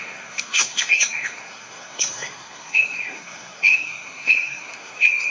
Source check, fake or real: fake